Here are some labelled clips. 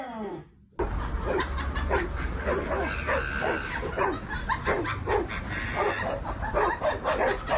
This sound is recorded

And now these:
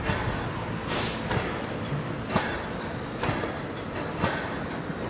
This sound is remade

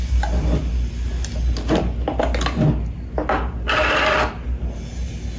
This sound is recorded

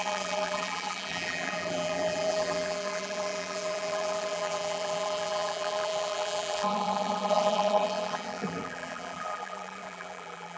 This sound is remade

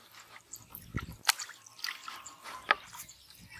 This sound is recorded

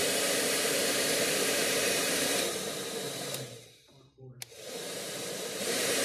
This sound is remade